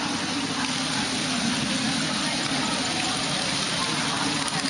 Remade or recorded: recorded